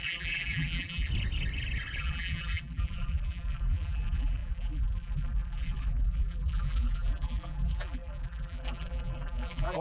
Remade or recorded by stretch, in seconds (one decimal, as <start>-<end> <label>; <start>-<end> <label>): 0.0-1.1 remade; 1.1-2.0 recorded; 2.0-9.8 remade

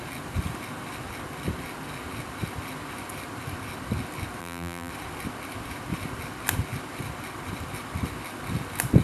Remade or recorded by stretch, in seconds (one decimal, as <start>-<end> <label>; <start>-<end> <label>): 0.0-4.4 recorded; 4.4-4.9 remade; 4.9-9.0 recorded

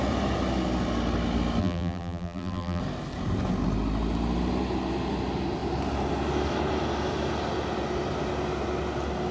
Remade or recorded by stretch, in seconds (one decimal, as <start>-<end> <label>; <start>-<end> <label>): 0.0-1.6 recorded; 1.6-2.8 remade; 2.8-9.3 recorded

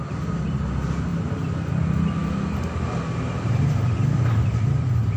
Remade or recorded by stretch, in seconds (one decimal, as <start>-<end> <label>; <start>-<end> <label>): 0.0-1.1 recorded; 1.1-1.7 remade; 1.7-2.2 recorded; 2.2-4.7 remade; 4.7-5.2 recorded